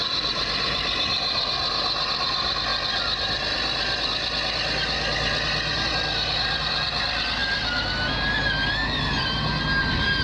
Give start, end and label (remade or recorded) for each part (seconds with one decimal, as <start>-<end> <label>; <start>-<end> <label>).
0.0-10.2 recorded